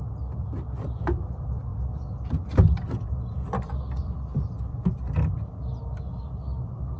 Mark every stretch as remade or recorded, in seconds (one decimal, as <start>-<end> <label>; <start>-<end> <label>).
0.0-7.0 recorded

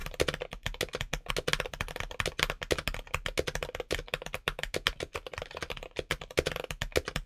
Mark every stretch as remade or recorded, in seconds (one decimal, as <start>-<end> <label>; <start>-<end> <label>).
0.0-7.3 recorded

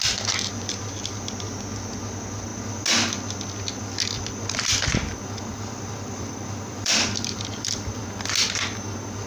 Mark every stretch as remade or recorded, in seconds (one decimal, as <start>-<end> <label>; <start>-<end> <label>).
0.0-5.5 recorded; 5.5-8.0 remade; 8.0-9.3 recorded

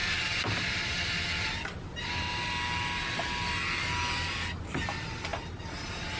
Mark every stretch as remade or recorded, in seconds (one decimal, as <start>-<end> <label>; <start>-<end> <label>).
0.0-6.2 recorded

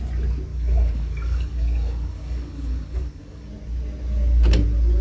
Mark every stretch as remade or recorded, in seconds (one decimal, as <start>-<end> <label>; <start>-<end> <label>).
0.0-0.5 recorded; 0.5-3.5 remade; 3.5-5.0 recorded

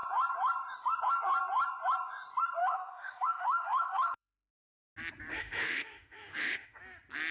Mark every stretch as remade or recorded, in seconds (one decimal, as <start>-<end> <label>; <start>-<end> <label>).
0.0-2.6 recorded; 2.6-4.5 remade; 4.5-5.3 recorded; 5.3-6.8 remade; 6.8-7.3 recorded

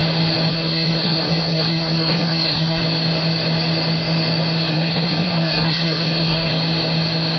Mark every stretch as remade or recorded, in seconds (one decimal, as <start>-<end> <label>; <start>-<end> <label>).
0.0-0.5 recorded; 0.5-2.8 remade; 2.8-4.7 recorded; 4.7-6.5 remade; 6.5-7.4 recorded

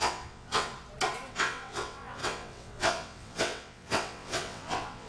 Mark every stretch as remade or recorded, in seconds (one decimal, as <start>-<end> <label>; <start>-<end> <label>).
0.0-0.7 remade; 0.7-1.3 recorded; 1.3-5.1 remade